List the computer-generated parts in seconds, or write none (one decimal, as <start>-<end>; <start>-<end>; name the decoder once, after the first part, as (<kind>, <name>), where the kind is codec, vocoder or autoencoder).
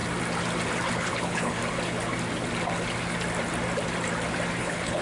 0.9-1.6 (codec, HILCodec); 4.6-5.0